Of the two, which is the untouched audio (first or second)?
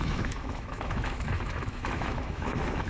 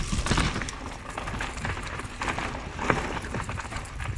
second